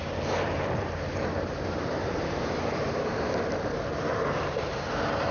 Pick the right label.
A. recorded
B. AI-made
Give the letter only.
B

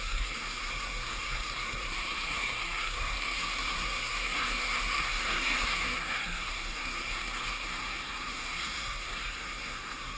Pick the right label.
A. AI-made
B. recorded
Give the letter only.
A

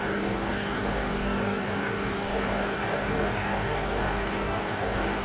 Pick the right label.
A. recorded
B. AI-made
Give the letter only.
B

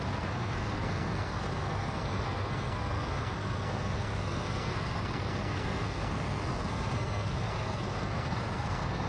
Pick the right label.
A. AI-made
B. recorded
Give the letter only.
A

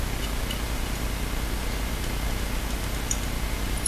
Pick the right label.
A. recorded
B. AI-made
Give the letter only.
A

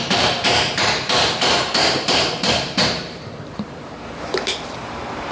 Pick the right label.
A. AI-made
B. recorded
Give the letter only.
A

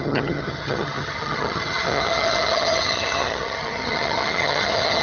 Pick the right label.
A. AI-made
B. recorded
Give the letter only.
A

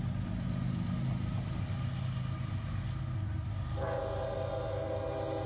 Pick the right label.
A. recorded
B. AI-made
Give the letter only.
A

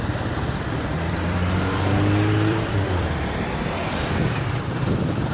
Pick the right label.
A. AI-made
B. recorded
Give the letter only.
A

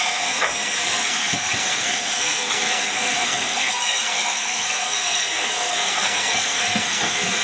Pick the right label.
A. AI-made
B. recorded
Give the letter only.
A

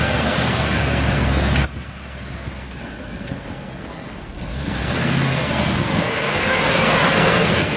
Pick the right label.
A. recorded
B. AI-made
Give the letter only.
B